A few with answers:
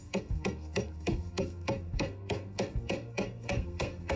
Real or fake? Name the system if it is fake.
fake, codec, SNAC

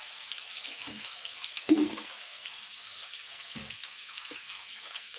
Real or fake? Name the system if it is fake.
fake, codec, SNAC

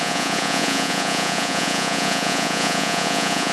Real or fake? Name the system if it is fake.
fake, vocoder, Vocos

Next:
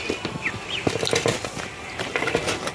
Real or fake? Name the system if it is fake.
real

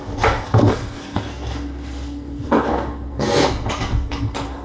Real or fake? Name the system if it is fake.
fake, codec, SNAC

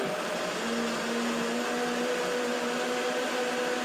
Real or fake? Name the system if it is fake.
real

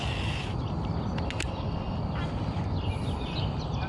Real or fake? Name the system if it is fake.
real